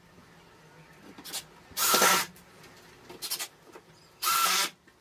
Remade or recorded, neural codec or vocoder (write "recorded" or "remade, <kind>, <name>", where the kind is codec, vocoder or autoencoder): recorded